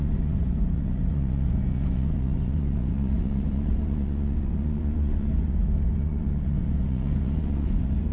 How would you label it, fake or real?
fake